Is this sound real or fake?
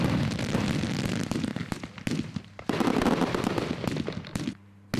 real